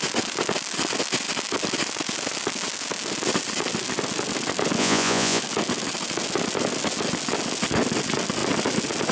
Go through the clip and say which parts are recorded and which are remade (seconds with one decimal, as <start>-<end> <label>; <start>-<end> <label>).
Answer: 0.0-4.8 recorded; 4.8-5.4 remade; 5.4-9.1 recorded